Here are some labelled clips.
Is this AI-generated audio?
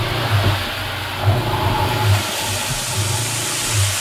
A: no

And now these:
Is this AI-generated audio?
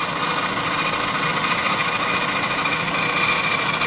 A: no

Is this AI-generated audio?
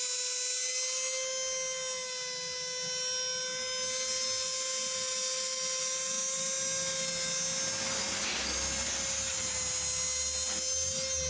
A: no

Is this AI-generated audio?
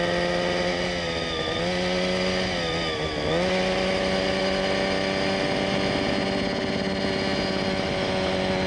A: no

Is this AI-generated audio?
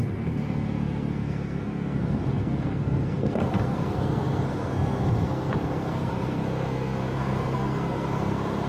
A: yes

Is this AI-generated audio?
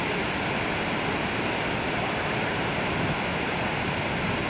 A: no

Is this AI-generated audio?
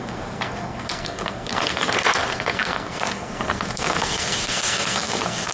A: yes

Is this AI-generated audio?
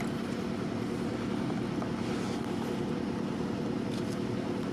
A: no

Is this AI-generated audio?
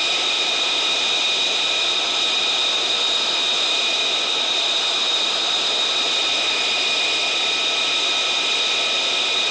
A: no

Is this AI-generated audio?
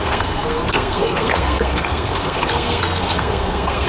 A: yes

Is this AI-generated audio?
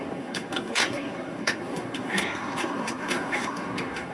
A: yes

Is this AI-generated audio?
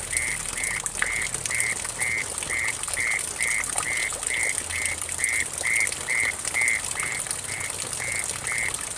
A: no